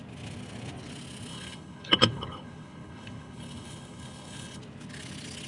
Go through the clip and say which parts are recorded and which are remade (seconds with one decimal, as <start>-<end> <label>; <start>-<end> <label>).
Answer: 0.0-1.3 recorded; 1.3-4.6 remade; 4.6-5.5 recorded